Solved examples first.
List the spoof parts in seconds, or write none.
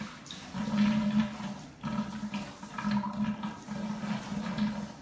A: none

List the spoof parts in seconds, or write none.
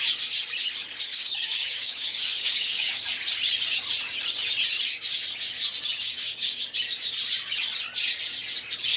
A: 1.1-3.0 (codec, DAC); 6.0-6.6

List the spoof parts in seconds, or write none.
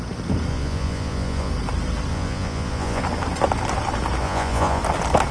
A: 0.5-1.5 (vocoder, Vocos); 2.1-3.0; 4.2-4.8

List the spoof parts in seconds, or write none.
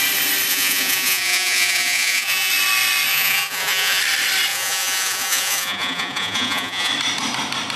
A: 0.5-2.5 (vocoder, Vocos); 3.1-4.0; 4.5-6.9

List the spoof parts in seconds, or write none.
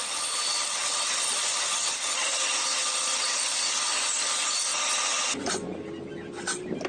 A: 0.8-3.2 (vocoder, BigVGAN v2); 4.7-5.5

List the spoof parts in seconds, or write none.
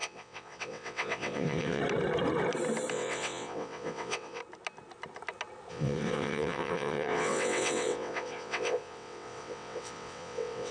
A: 0.0-1.8 (vocoder, WaveNeXt); 2.9-4.4; 5.7-10.7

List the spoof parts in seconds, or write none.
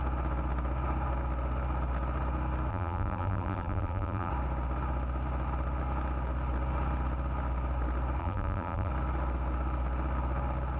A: 2.7-4.3 (vocoder, BigVGAN v2); 8.2-8.9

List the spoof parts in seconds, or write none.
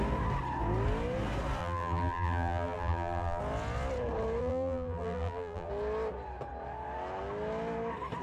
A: 1.6-3.4 (vocoder, BigVGAN v2); 4.4-5.7